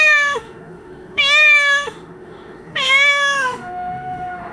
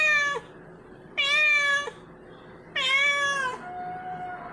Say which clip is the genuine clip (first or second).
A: second